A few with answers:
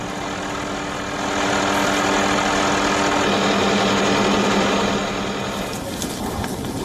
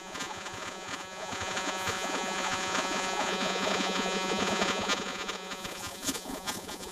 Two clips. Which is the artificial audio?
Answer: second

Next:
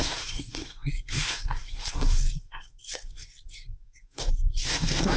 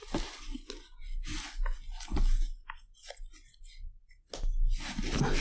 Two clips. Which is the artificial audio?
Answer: first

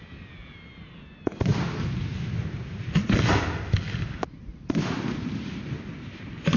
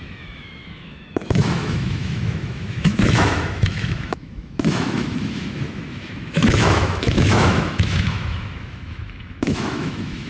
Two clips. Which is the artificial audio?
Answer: second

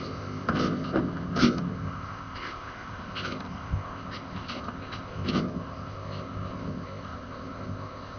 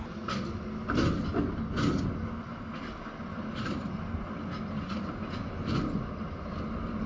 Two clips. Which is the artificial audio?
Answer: first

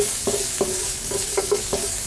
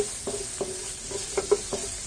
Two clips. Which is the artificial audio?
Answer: first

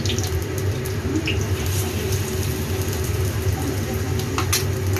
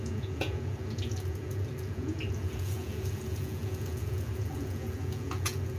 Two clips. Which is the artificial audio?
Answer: second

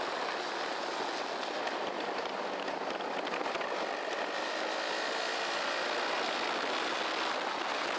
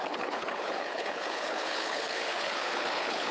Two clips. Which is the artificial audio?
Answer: second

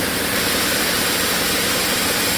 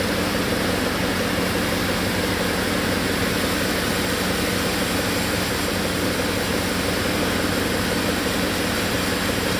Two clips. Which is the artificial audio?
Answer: first